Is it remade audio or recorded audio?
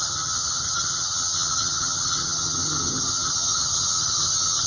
remade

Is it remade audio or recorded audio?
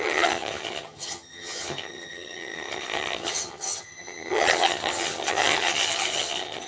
remade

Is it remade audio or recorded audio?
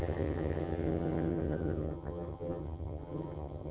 remade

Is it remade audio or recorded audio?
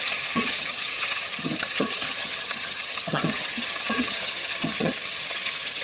remade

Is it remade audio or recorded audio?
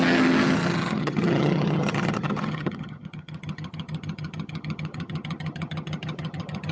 remade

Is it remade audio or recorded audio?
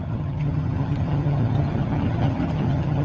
remade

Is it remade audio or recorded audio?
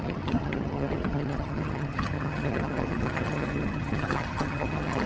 remade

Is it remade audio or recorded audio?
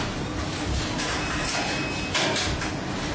recorded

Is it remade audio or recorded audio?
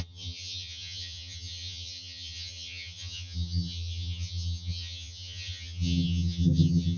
remade